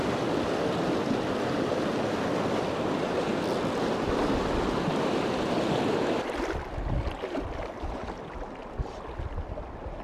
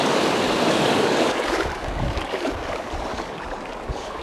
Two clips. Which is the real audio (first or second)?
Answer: first